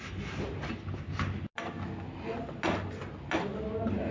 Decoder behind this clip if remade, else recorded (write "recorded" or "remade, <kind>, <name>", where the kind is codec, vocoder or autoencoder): recorded